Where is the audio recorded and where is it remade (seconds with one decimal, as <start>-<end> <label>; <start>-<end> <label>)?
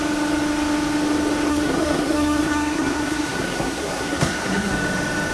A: 0.0-1.5 recorded; 1.5-4.7 remade; 4.7-5.3 recorded